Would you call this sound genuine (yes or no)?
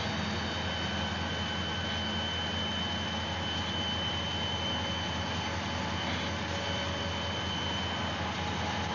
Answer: yes